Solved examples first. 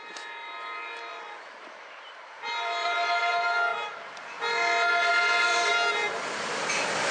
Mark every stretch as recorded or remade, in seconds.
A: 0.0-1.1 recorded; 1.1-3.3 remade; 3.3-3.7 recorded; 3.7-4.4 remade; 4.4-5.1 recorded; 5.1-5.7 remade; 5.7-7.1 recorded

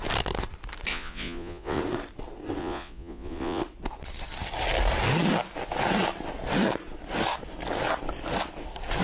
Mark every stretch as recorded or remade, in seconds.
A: 0.0-0.9 recorded; 0.9-1.8 remade; 1.8-2.6 recorded; 2.6-3.6 remade; 3.6-9.0 recorded

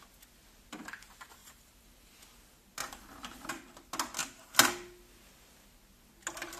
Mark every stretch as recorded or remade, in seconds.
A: 0.0-1.4 recorded; 1.4-2.2 remade; 2.2-2.8 recorded; 2.8-3.5 remade; 3.5-6.6 recorded

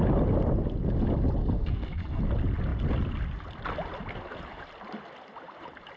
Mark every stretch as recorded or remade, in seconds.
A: 0.0-1.4 recorded; 1.4-2.2 remade; 2.2-6.0 recorded